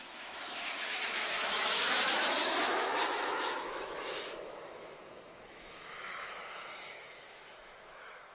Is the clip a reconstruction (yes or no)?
yes